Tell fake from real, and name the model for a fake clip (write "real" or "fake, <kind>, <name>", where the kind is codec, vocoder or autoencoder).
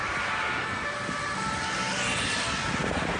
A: real